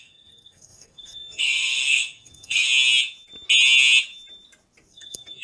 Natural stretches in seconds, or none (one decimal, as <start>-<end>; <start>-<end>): 2.7-4.9